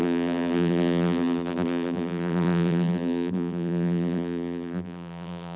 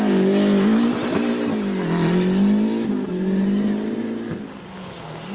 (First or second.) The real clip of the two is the second